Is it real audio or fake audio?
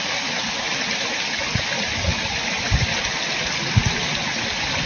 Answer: real